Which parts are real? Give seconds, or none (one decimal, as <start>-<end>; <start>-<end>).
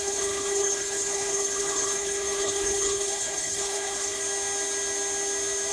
4.2-5.7